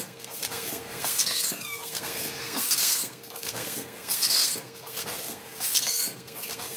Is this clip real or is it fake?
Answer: fake